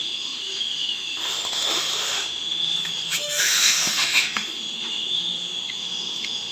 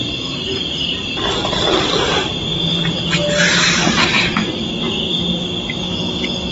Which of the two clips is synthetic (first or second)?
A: first